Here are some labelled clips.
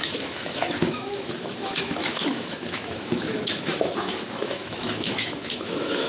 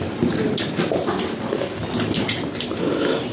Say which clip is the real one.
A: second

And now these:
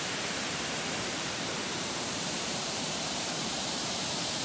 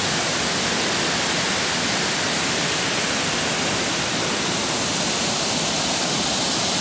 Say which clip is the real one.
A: second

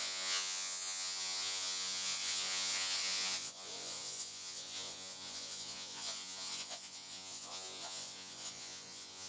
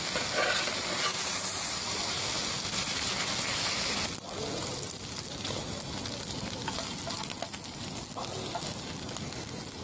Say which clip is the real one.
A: second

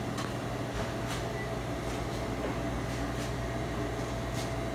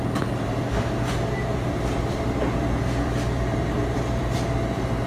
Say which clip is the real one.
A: first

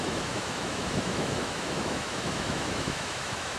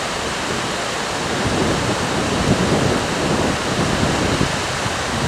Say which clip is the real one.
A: second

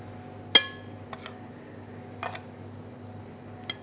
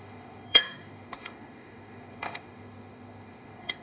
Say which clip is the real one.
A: first